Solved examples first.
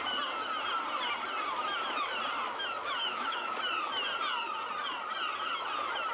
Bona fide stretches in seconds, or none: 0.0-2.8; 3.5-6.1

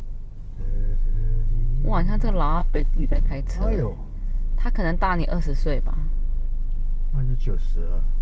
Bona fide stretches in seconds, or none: 0.0-2.6; 3.3-8.2

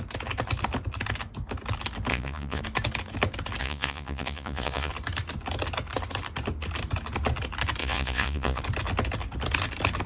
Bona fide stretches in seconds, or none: 0.0-2.1; 2.6-3.6; 4.9-7.8; 8.6-10.1

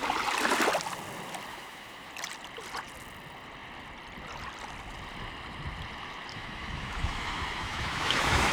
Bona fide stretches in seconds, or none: 0.0-1.5; 2.1-6.3

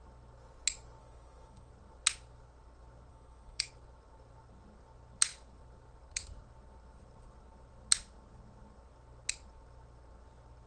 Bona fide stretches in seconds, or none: 0.0-1.0; 1.7-3.1; 3.7-10.7